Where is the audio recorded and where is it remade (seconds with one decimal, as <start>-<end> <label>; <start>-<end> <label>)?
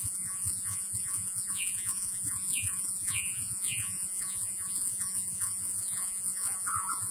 0.0-7.1 remade